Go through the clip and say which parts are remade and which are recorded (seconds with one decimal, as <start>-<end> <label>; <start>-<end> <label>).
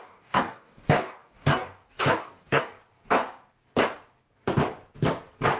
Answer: 0.0-2.8 remade; 2.8-5.6 recorded